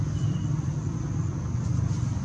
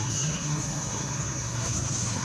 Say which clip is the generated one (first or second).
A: second